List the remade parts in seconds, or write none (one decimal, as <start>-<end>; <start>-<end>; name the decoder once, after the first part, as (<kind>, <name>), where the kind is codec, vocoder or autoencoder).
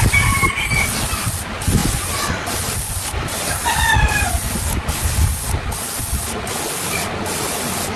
none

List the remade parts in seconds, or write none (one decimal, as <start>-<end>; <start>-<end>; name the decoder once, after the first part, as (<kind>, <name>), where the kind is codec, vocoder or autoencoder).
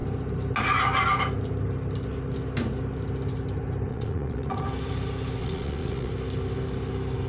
3.9-4.6 (vocoder, Vocos); 5.4-6.1